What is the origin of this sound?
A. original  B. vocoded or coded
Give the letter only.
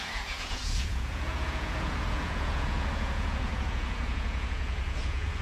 B